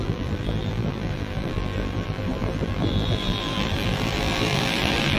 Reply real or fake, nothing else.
fake